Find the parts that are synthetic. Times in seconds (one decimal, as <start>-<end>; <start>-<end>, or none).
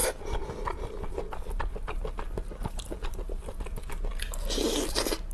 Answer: none